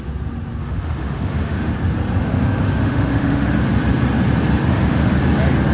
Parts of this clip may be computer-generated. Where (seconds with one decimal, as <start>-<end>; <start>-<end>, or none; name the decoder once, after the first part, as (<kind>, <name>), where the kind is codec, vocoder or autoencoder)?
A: 0.6-1.7 (autoencoder, DAC-VAE); 2.2-3.6; 4.7-5.2